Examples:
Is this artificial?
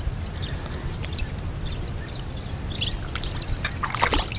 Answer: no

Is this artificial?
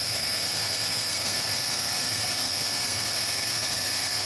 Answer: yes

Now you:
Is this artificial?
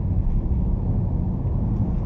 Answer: no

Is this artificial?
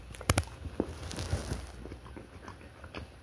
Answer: no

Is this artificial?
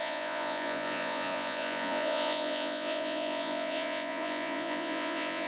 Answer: yes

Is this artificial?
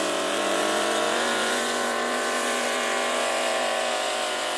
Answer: yes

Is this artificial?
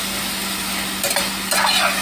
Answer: no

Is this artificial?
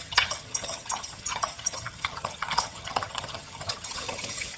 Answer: yes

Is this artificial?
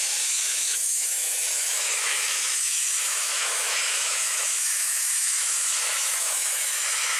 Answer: yes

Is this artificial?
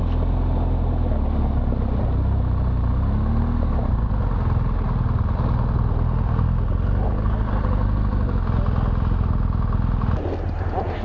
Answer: no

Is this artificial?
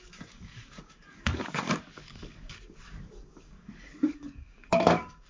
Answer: yes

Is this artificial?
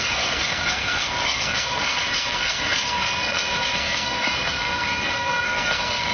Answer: yes